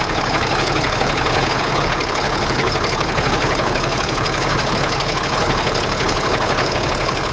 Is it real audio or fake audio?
fake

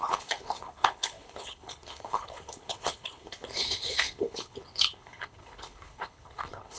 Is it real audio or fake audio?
fake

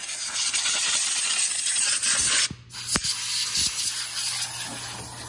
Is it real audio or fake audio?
real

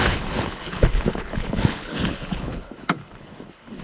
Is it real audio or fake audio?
fake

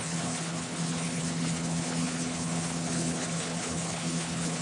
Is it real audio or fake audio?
fake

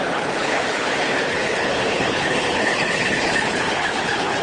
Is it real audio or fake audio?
fake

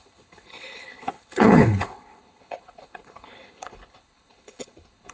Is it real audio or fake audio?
fake